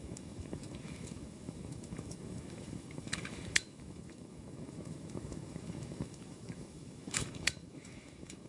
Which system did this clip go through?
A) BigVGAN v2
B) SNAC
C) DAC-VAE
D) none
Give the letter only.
C